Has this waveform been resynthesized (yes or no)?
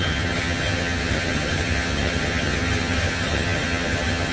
yes